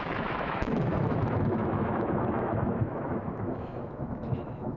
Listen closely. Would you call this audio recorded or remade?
remade